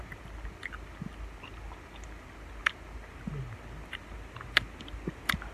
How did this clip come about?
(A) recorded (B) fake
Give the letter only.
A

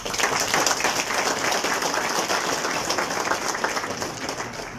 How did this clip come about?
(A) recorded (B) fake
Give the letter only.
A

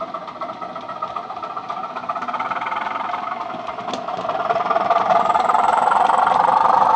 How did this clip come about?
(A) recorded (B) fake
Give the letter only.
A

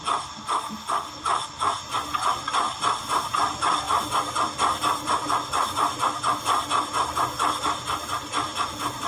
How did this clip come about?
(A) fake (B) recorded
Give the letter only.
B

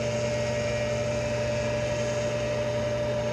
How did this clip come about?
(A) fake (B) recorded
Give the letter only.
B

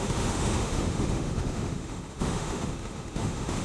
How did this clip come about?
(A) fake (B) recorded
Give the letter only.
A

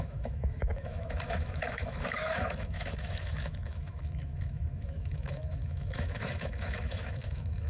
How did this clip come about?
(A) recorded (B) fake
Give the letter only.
B